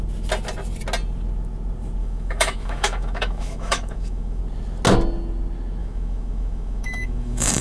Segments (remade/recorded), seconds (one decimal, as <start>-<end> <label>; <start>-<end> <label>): 0.0-2.0 recorded; 2.0-4.4 remade; 4.4-5.8 recorded; 5.8-7.6 remade